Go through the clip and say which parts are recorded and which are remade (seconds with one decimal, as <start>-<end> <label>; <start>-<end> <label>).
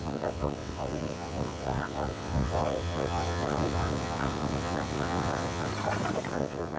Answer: 0.0-5.7 remade; 5.7-6.3 recorded; 6.3-6.8 remade